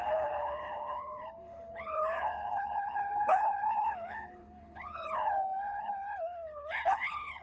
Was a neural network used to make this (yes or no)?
yes